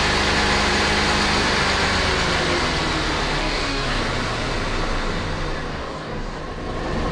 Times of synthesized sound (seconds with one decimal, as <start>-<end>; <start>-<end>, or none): 3.4-4.0; 5.7-6.4